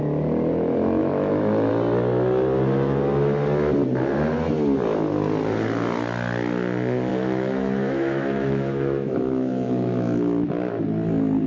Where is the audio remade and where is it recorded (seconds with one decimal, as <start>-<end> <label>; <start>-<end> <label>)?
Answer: 0.0-1.0 recorded; 1.0-1.7 remade; 1.7-7.1 recorded; 7.1-10.8 remade; 10.8-11.5 recorded